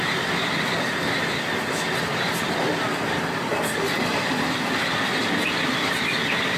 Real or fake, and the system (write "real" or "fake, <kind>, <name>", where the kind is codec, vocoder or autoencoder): real